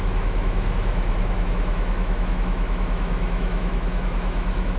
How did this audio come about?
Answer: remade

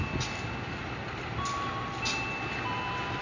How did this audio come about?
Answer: recorded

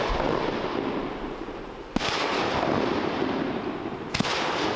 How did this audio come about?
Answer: recorded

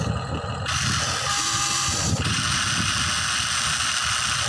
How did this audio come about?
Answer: recorded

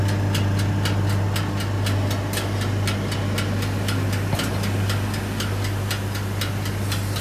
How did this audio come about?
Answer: recorded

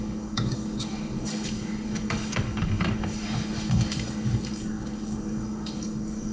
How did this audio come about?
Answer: remade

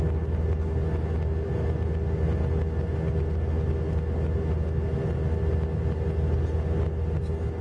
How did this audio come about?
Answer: recorded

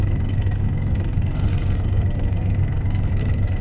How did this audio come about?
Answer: remade